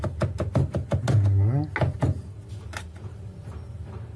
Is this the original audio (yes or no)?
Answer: yes